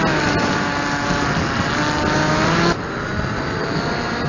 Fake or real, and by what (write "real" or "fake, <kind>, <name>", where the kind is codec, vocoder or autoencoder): real